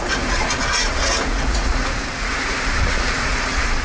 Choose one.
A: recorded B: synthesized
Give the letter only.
B